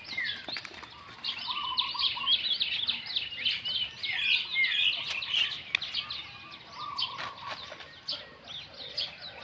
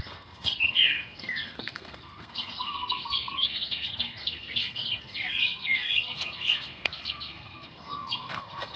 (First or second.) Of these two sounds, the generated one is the second